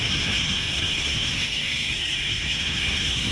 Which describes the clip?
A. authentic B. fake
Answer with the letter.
B